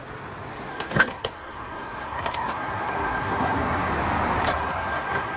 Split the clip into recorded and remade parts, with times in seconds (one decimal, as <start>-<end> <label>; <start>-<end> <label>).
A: 0.0-0.7 recorded; 0.7-3.9 remade; 3.9-4.5 recorded; 4.5-5.4 remade